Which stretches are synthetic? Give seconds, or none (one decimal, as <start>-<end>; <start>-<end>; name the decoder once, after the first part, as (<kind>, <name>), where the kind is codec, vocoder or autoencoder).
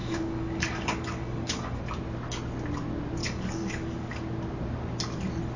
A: 0.0-1.8 (codec, DAC); 3.2-4.2